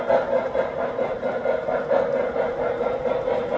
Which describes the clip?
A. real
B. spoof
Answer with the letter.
A